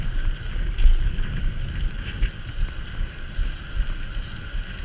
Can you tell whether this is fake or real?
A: real